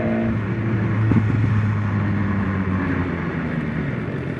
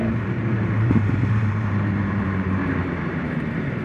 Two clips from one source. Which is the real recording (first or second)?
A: first